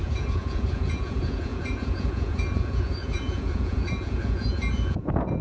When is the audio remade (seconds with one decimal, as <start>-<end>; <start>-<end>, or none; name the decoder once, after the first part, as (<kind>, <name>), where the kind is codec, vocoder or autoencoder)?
0.0-5.4 (vocoder, Vocos)